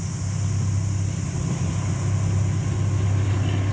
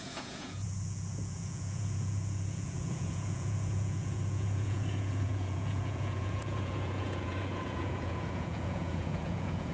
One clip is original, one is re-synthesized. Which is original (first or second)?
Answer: first